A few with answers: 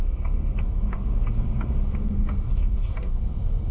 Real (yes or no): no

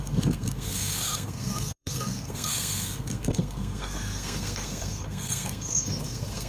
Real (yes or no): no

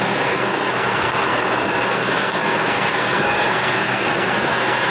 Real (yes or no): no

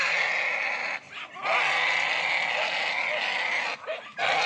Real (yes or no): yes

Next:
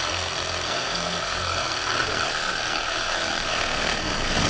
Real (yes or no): no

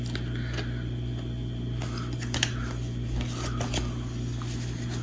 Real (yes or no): yes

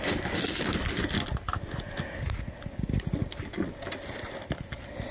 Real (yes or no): yes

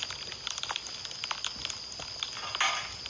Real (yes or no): yes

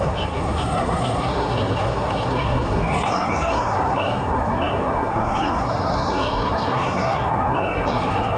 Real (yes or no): no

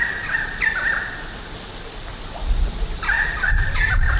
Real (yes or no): yes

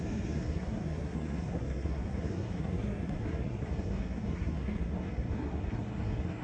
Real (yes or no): no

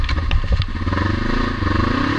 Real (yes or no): yes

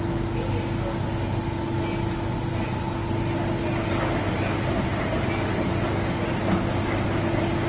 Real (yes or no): yes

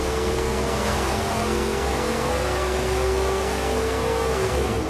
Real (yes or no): no